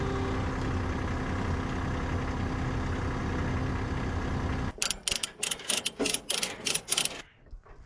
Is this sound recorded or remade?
recorded